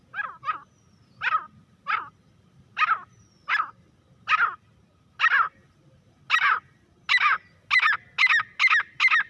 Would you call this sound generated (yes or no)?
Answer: no